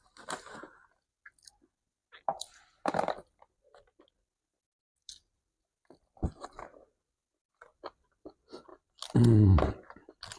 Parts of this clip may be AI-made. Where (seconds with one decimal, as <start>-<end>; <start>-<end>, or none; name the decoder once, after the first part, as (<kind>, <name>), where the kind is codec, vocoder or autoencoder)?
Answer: none